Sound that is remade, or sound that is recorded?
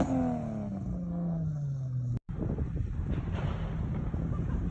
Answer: recorded